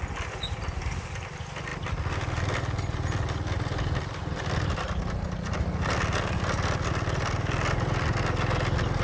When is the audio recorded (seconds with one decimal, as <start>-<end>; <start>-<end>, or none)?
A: 0.0-9.0